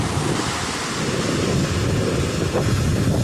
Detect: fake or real real